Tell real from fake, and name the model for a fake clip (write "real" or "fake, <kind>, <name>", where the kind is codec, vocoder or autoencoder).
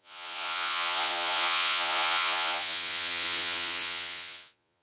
fake, vocoder, Vocos